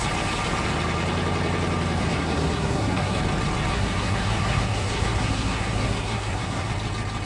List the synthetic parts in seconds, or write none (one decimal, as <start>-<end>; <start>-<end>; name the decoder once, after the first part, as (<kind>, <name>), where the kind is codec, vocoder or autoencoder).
2.0-3.2 (codec, SNAC); 3.7-6.7